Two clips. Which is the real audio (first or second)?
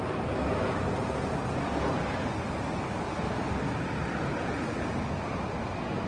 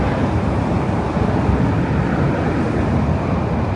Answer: first